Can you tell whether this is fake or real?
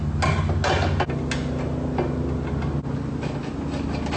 real